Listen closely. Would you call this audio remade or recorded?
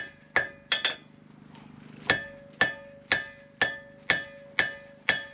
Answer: recorded